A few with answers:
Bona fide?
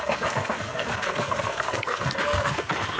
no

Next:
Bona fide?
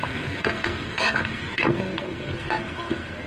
no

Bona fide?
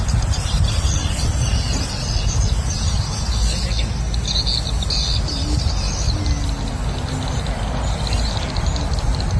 yes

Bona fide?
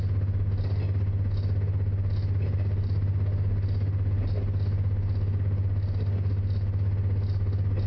yes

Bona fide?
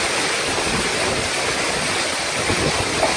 yes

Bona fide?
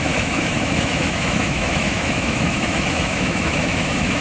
no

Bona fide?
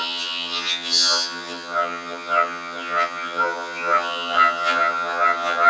no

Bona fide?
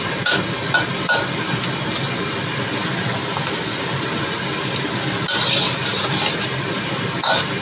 yes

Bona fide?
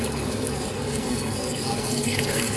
no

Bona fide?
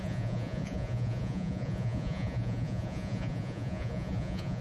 no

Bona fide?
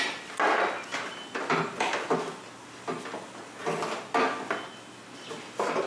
yes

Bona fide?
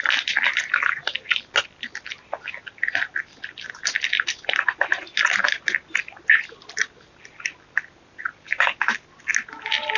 yes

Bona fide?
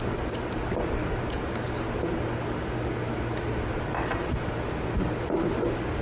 yes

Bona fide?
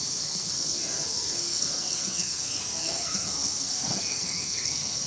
no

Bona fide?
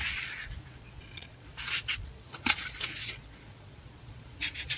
no